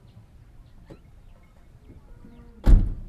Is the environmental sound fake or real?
real